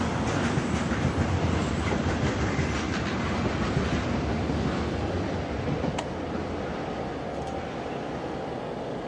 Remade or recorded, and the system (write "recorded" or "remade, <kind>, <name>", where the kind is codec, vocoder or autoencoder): recorded